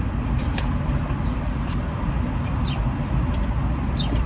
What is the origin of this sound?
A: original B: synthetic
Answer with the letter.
A